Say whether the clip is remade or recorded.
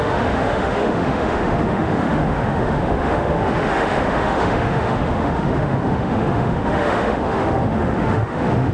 remade